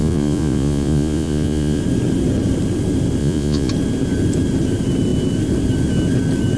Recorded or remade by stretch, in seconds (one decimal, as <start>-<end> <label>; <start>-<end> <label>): 0.0-1.8 remade; 1.8-3.2 recorded; 3.2-3.7 remade; 3.7-6.6 recorded